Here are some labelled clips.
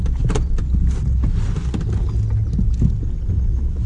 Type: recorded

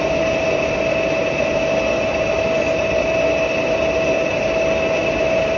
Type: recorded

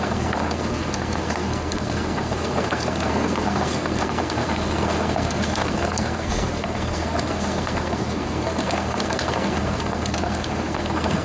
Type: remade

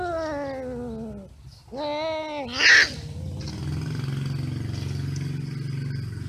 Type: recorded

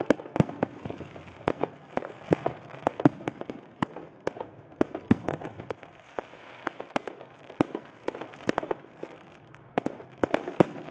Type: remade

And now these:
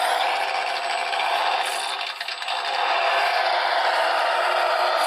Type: recorded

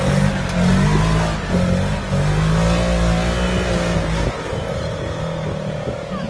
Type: recorded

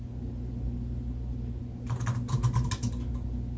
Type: recorded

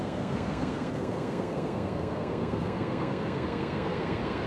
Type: remade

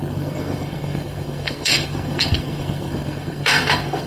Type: remade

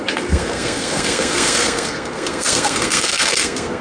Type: remade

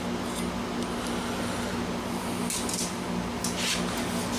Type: recorded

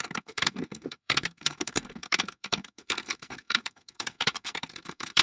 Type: remade